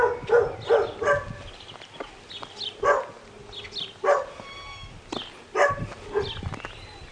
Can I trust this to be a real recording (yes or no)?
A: yes